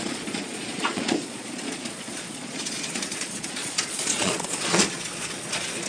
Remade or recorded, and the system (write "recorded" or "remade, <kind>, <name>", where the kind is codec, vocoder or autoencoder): remade, vocoder, Vocos